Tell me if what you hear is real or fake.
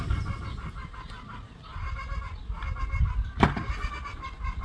real